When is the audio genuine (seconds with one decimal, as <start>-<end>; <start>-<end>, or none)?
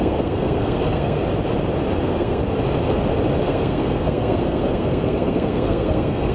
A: 1.2-2.0; 2.4-3.4